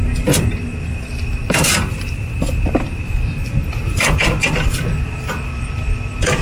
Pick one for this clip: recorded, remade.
remade